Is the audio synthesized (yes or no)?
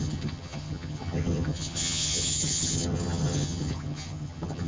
yes